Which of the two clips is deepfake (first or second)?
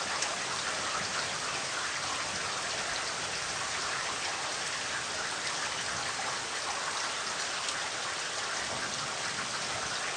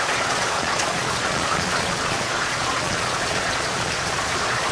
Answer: second